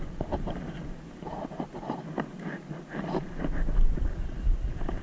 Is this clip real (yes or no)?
yes